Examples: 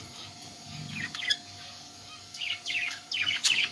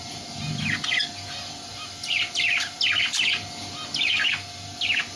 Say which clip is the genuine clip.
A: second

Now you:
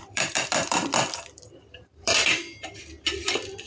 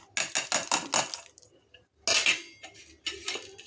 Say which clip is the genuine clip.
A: second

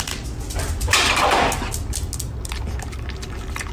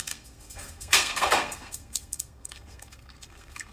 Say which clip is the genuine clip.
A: first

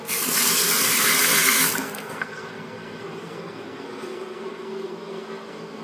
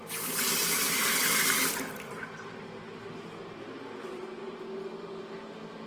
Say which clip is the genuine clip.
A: second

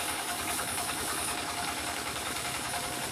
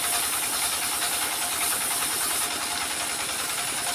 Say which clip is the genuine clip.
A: second